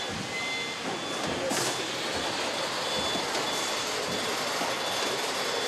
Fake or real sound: real